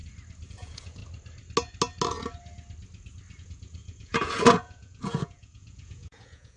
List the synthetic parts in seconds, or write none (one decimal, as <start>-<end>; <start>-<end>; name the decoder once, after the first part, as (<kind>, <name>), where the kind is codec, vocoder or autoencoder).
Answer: 0.5-1.0 (vocoder, Vocos); 3.4-6.6